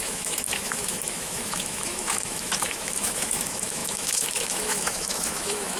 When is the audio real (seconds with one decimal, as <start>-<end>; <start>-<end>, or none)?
none